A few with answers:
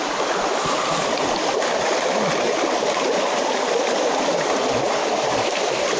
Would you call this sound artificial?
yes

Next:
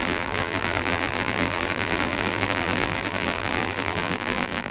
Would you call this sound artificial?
yes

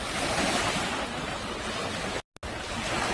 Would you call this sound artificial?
no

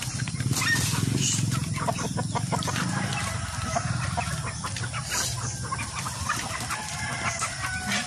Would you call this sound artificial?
no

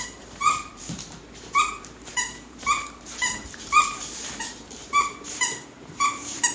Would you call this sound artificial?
yes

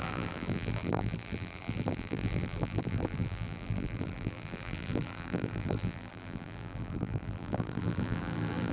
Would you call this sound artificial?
yes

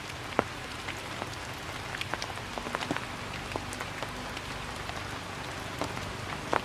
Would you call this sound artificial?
no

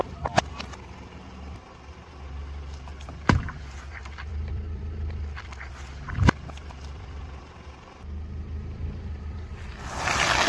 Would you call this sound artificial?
yes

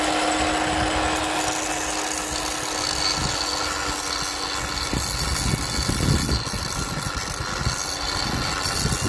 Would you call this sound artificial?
no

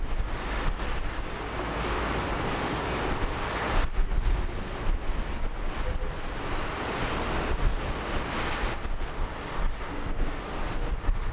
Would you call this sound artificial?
no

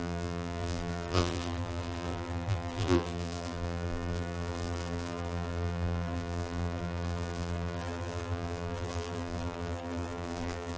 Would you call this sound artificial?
yes